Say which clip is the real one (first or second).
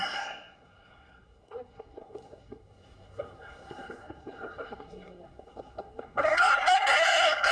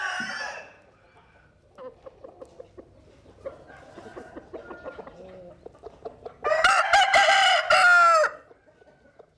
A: second